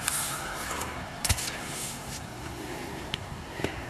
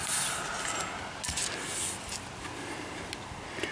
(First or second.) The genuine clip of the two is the second